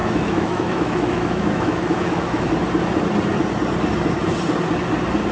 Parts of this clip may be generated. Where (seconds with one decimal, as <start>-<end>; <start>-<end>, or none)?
0.0-2.5